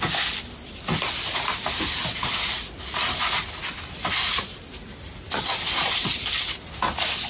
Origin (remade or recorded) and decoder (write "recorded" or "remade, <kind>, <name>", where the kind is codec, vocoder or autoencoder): recorded